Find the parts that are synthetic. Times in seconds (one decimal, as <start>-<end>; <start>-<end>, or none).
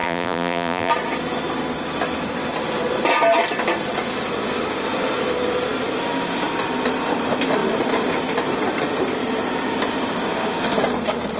0.0-0.9